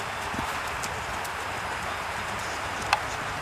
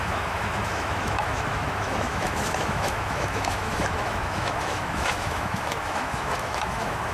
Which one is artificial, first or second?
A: second